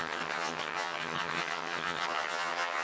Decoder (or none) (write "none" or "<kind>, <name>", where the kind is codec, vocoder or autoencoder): vocoder, HiFi-GAN